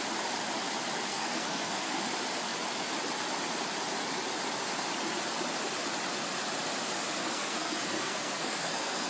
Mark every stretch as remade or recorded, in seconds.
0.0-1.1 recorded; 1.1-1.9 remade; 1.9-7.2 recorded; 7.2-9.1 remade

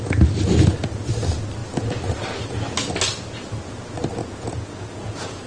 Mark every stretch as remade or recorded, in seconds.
0.0-4.2 recorded; 4.2-5.5 remade